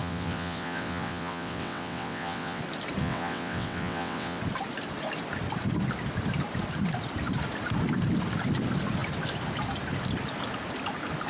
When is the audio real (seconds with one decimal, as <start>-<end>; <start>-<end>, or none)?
2.6-3.0; 4.4-11.3